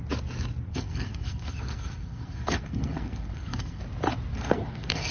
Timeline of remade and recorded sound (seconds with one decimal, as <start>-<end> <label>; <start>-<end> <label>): 0.0-0.7 recorded; 0.7-3.8 remade; 3.8-4.3 recorded; 4.3-5.1 remade